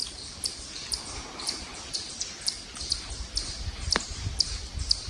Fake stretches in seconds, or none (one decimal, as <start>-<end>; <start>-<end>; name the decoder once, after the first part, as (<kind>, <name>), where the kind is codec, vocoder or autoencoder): 0.0-2.9 (vocoder, BigVGAN v2); 3.4-5.1

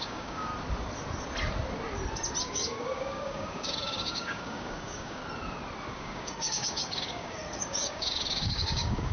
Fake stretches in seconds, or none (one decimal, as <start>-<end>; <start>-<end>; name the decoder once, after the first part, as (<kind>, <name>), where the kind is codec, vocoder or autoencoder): 0.0-0.5 (codec, DAC); 2.4-5.2; 5.9-9.1